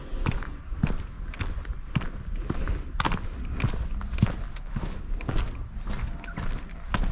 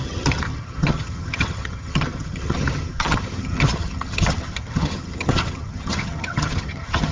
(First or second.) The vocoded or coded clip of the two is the second